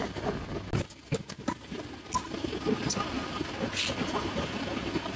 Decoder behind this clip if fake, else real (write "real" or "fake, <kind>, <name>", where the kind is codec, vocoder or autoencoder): real